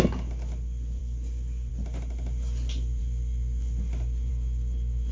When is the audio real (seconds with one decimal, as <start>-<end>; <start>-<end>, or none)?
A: 0.0-5.1